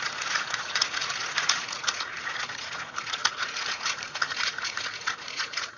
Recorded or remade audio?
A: remade